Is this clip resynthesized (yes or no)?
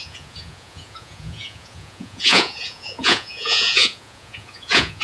yes